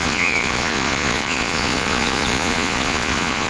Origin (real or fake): fake